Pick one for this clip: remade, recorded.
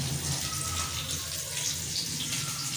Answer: recorded